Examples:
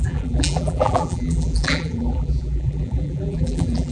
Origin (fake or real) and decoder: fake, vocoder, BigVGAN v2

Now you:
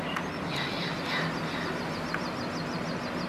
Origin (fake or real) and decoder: real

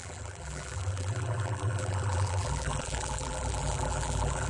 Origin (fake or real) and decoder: fake, vocoder, BigVGAN v2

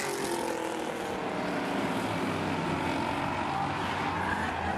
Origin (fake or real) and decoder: real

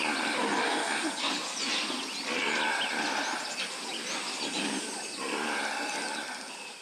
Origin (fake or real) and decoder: real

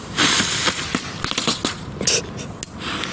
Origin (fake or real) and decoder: real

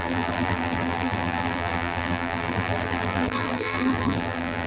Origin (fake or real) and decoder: fake, vocoder, BigVGAN v2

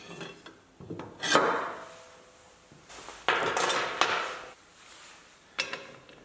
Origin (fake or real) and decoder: real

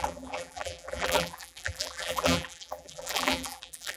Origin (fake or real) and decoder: fake, vocoder, BigVGAN v2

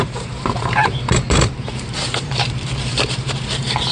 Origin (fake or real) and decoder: fake, vocoder, BigVGAN v2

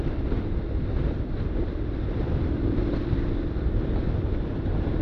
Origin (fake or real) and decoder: real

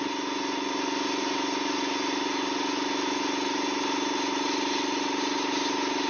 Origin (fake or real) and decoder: real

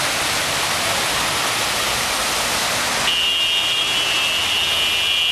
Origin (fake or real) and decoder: real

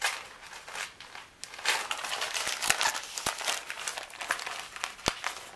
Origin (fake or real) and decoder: real